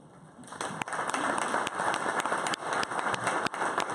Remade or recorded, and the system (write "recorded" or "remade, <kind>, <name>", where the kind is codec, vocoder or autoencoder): recorded